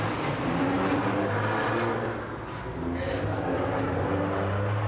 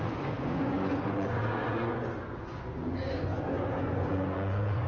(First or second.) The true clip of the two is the first